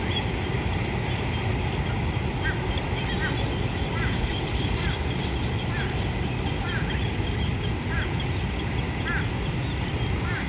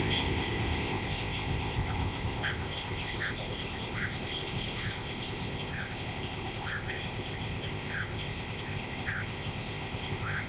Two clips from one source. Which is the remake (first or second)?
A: second